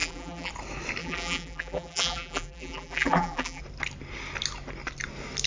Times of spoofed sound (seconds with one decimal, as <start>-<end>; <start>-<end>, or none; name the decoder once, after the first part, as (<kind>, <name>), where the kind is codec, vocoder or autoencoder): 0.0-0.5 (vocoder, BigVGAN v2); 1.0-3.6